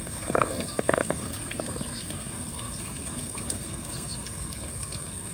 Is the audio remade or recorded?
remade